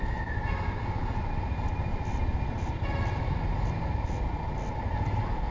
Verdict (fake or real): real